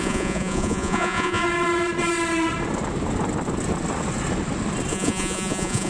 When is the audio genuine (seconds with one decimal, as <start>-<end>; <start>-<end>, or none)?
1.4-4.9